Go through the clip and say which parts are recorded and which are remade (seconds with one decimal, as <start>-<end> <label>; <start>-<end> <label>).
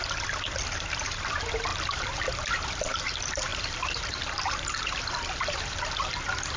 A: 0.0-3.5 recorded; 3.5-5.8 remade; 5.8-6.6 recorded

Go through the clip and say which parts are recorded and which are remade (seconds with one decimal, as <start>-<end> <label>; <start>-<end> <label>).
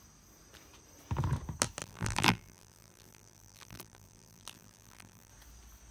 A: 0.0-1.8 recorded; 1.8-5.3 remade; 5.3-5.9 recorded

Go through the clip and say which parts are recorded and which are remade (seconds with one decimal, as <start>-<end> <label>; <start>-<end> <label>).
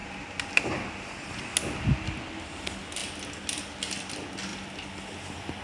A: 0.0-4.5 recorded; 4.5-5.6 remade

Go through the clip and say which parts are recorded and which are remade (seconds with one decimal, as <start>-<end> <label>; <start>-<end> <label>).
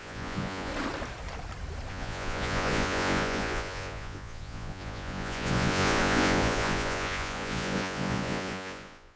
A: 0.0-0.7 remade; 0.7-1.9 recorded; 1.9-9.2 remade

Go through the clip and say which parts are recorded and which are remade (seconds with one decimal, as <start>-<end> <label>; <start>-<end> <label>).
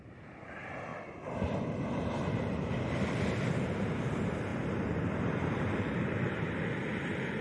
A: 0.0-0.9 remade; 0.9-1.8 recorded; 1.8-4.5 remade; 4.5-5.8 recorded; 5.8-7.4 remade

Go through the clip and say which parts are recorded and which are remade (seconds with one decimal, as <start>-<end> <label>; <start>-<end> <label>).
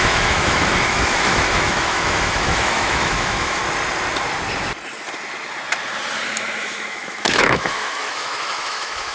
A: 0.0-3.6 remade; 3.6-6.6 recorded; 6.6-9.1 remade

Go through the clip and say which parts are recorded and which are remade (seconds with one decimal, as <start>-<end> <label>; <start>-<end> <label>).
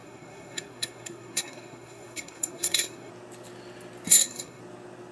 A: 0.0-3.1 remade; 3.1-4.1 recorded; 4.1-4.6 remade; 4.6-5.1 recorded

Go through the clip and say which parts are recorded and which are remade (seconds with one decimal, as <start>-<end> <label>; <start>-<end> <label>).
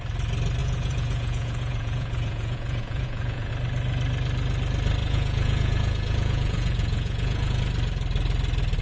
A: 0.0-0.6 recorded; 0.6-3.5 remade; 3.5-5.0 recorded; 5.0-7.6 remade; 7.6-8.8 recorded